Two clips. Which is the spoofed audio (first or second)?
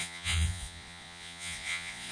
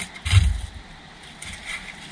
first